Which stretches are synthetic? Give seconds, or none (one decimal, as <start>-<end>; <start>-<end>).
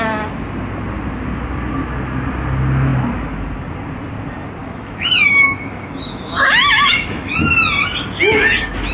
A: 4.6-7.3